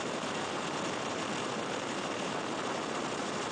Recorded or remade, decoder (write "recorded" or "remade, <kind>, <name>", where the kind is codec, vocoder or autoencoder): remade, vocoder, BigVGAN v2